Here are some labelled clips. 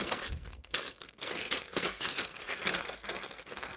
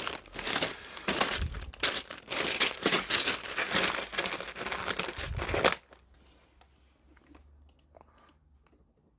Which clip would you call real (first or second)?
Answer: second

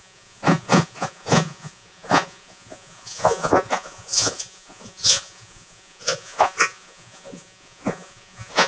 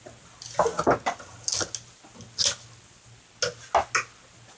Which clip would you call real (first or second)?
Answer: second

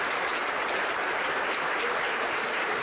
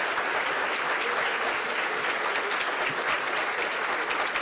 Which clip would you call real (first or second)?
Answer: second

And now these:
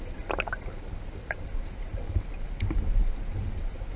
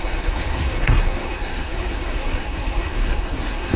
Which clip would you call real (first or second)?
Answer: first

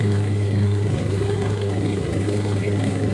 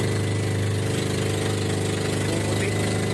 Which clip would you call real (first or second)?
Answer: second